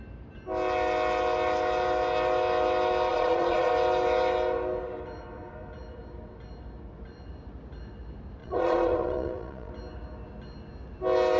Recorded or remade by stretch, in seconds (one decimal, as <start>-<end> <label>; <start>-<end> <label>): 0.0-3.1 recorded; 3.1-3.7 remade; 3.7-8.4 recorded; 8.4-9.7 remade; 9.7-11.4 recorded